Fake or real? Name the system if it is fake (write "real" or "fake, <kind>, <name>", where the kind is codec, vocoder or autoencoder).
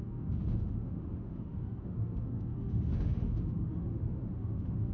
fake, autoencoder, DAC-VAE